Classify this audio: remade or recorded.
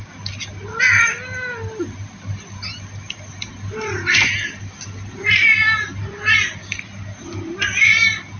recorded